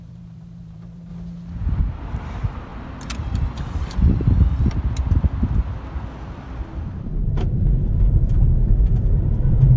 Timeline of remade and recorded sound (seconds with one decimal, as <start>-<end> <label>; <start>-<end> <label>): 0.0-1.1 remade; 1.1-1.8 recorded; 1.8-2.7 remade; 2.7-6.8 recorded; 6.8-9.8 remade